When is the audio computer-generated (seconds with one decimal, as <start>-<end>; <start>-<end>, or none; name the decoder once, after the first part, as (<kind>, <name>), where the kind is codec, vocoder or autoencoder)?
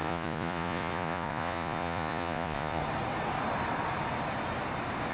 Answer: 0.0-2.8 (vocoder, Vocos)